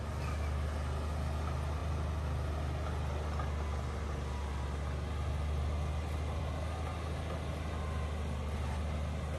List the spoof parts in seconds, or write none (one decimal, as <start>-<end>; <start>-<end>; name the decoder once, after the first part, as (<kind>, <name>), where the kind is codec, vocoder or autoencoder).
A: none